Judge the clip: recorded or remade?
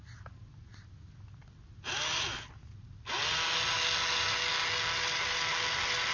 recorded